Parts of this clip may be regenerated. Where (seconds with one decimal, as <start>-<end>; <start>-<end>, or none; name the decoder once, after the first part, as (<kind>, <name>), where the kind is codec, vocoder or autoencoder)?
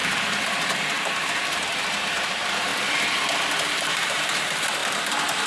0.0-2.7 (vocoder, BigVGAN v2); 3.6-4.8